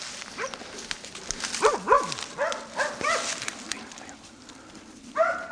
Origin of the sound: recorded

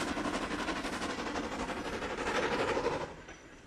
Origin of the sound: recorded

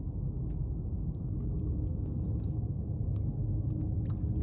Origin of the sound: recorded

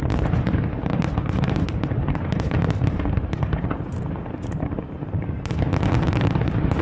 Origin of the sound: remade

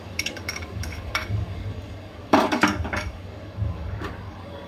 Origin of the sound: remade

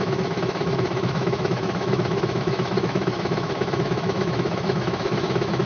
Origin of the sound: remade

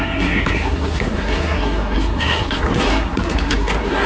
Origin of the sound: remade